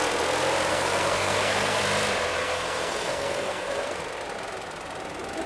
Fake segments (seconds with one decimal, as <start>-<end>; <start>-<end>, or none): 0.7-1.8; 2.4-4.0